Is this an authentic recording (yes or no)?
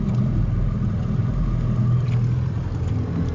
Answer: yes